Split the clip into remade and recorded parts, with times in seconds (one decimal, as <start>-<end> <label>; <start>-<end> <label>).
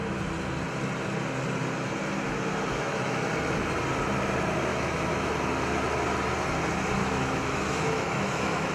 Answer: 0.0-2.7 recorded; 2.7-3.3 remade; 3.3-4.7 recorded; 4.7-5.3 remade; 5.3-7.0 recorded; 7.0-8.7 remade